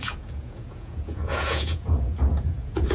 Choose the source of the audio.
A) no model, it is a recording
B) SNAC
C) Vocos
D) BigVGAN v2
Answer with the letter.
C